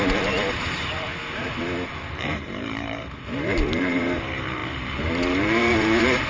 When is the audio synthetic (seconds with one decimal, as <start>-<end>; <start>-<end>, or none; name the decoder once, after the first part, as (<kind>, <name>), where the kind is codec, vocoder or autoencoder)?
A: 0.0-1.1 (vocoder, BigVGAN v2); 2.1-6.3